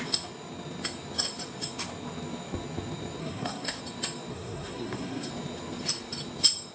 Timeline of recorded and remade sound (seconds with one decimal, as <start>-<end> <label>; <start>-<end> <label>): 0.0-3.2 recorded; 3.2-3.8 remade; 3.8-4.3 recorded; 4.3-5.3 remade; 5.3-6.7 recorded